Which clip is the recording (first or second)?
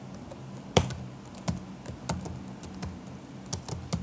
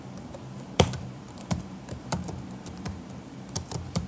first